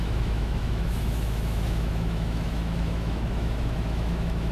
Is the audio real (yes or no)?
no